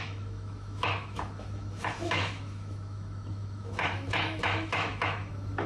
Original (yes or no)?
no